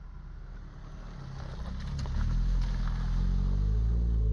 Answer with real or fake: real